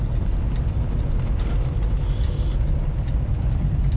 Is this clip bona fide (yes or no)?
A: yes